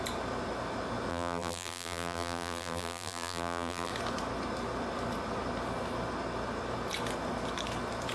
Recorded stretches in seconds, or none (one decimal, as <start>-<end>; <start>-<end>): 0.0-1.1; 3.9-8.1